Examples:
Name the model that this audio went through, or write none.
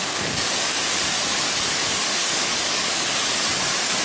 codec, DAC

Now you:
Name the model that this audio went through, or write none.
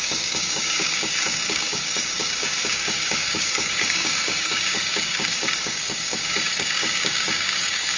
codec, DAC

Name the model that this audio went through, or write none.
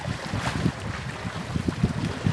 none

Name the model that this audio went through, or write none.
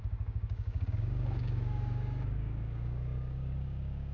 codec, DAC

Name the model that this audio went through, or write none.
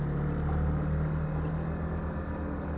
none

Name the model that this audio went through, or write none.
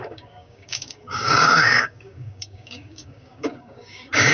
codec, DAC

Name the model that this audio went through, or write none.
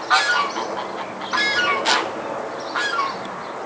none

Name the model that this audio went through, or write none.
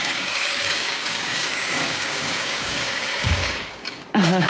codec, DAC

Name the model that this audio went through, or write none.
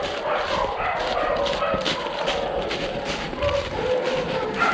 none